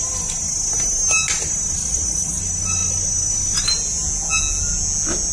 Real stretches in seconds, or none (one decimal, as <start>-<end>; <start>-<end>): 0.0-1.8; 2.4-5.3